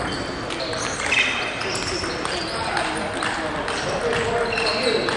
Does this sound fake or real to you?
real